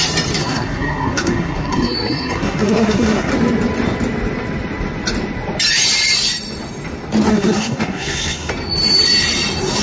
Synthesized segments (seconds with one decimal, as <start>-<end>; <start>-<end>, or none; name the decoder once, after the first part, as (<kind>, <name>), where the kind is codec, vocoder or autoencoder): 0.4-3.3 (codec, SNAC); 7.3-8.5